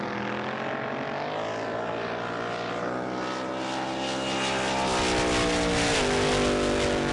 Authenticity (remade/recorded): recorded